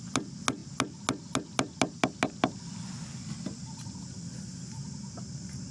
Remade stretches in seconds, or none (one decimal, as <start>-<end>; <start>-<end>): none